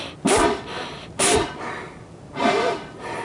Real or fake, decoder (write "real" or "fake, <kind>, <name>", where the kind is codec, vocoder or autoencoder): real